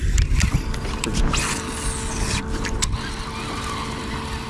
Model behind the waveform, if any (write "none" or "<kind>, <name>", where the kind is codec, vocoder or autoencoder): none